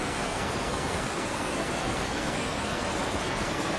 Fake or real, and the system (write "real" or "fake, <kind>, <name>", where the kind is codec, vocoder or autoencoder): fake, codec, SNAC